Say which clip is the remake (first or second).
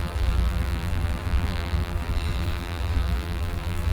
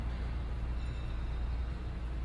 first